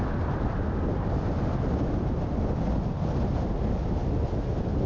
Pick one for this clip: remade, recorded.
recorded